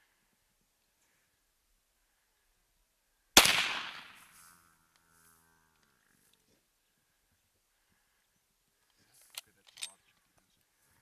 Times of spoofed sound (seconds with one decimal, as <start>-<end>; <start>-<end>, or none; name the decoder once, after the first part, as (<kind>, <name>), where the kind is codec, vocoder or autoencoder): none